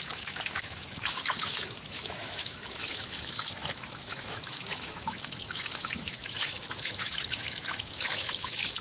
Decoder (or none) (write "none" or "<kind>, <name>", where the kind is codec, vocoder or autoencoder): autoencoder, DAC-VAE